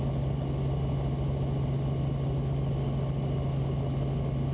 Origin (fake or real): real